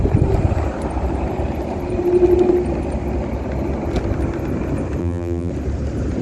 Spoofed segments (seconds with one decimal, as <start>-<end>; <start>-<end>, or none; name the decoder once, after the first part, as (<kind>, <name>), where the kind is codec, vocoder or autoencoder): 5.0-5.5 (vocoder, BigVGAN v2)